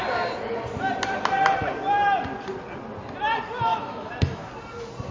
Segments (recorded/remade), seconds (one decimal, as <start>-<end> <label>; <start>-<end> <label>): 0.0-3.7 recorded; 3.7-4.5 remade; 4.5-5.1 recorded